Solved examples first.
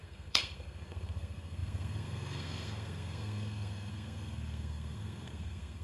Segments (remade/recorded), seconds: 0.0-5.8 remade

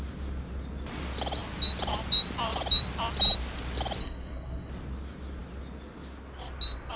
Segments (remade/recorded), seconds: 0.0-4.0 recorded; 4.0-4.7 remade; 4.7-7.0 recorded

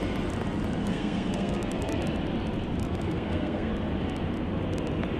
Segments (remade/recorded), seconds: 0.0-0.8 recorded; 0.8-2.0 remade; 2.0-2.8 recorded; 2.8-3.7 remade; 3.7-5.2 recorded